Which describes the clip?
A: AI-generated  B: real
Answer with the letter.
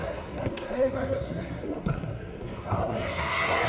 A